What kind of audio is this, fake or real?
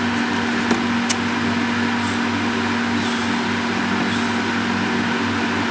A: real